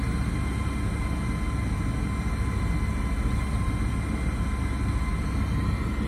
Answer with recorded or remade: recorded